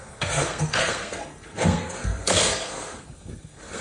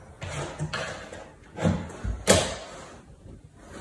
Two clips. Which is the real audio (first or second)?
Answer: second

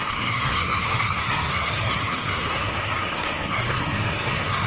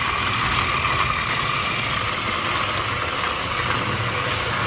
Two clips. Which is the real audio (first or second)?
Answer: second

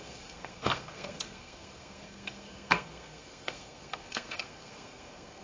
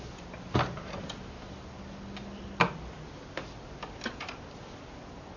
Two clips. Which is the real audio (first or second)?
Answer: second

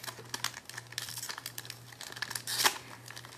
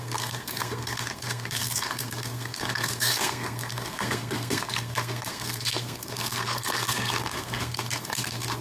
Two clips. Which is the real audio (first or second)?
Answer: first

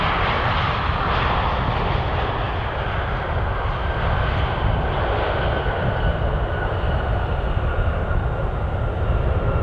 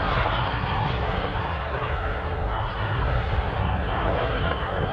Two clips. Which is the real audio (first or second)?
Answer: first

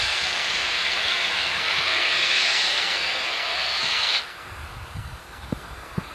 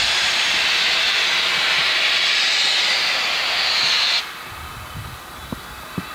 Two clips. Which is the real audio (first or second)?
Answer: second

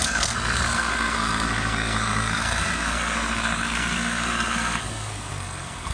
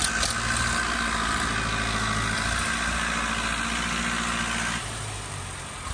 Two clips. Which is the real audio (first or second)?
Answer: second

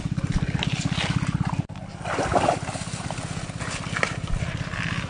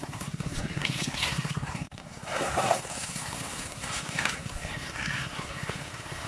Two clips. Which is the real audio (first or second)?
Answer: first